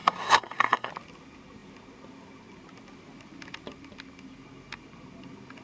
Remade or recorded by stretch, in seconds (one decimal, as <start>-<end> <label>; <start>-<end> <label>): 0.0-0.9 remade; 0.9-5.6 recorded